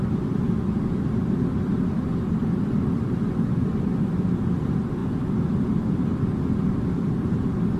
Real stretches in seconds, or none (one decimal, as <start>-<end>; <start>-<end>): 5.0-6.7